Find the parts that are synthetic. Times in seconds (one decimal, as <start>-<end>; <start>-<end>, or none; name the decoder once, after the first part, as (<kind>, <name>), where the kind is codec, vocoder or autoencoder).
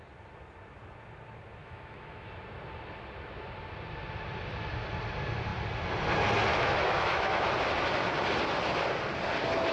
1.6-2.3 (autoencoder, DAC-VAE); 6.5-7.5